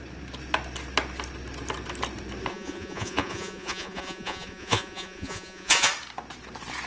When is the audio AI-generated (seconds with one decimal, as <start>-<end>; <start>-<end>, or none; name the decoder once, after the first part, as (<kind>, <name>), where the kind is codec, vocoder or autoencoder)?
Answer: 2.5-5.9 (vocoder, Vocos)